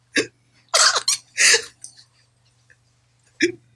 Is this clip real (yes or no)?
yes